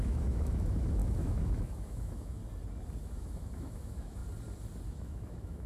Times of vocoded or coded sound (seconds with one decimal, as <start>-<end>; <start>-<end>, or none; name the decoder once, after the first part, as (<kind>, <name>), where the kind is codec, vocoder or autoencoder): 0.0-2.4 (autoencoder, DAC-VAE); 3.0-4.2; 4.9-5.7